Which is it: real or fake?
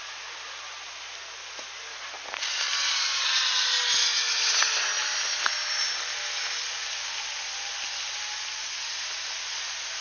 real